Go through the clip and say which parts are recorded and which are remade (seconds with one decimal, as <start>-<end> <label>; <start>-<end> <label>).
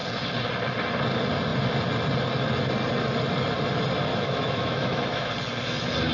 0.0-4.1 recorded; 4.1-5.3 remade; 5.3-6.1 recorded